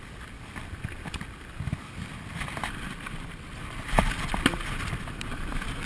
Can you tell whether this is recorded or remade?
recorded